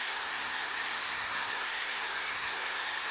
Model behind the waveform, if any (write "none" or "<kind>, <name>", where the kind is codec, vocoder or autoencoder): codec, SNAC